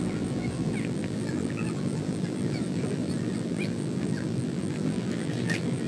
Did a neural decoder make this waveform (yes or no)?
yes